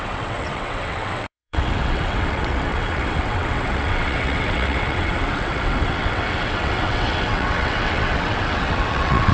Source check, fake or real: fake